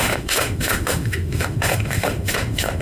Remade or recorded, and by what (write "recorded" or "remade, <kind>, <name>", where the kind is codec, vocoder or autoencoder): remade, autoencoder, DAC-VAE